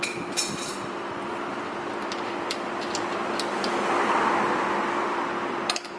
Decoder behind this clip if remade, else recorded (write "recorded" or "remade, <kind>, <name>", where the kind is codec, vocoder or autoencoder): recorded